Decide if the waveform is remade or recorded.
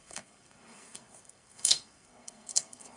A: remade